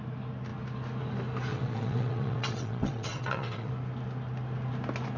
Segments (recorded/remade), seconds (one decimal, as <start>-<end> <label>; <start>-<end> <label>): 0.0-1.5 recorded; 1.5-3.7 remade; 3.7-5.2 recorded